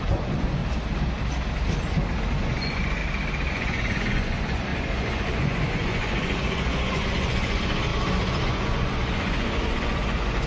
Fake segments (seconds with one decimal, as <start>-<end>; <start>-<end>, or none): 0.0-0.6; 2.4-3.0; 3.5-10.5